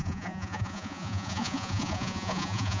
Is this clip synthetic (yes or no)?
yes